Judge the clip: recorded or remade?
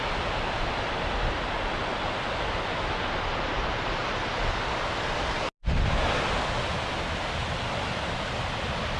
recorded